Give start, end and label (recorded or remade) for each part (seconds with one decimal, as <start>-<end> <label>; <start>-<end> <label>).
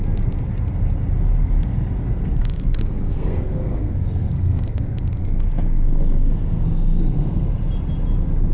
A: 0.0-2.4 recorded; 2.4-7.5 remade; 7.5-8.5 recorded